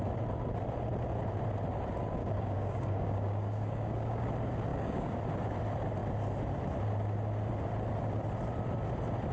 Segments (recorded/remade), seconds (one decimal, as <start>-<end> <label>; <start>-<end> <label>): 0.0-2.2 recorded; 2.2-4.3 remade; 4.3-4.7 recorded; 4.7-5.2 remade; 5.2-9.3 recorded